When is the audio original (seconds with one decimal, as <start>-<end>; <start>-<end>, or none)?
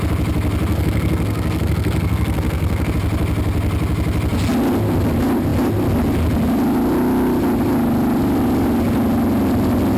0.0-0.7; 2.9-10.0